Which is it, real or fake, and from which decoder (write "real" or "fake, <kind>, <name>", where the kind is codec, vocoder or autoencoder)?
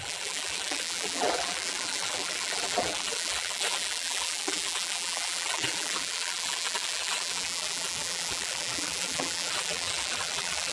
fake, vocoder, BigVGAN v2